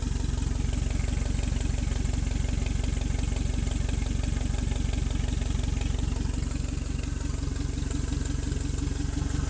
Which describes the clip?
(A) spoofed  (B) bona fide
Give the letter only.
B